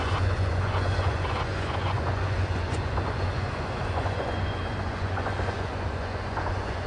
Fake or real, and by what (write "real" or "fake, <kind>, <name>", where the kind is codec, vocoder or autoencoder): fake, vocoder, Vocos